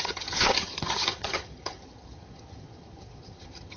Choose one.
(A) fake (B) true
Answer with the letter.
A